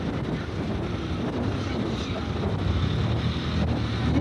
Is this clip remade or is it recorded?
recorded